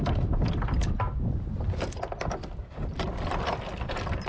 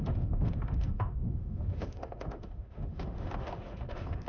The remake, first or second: second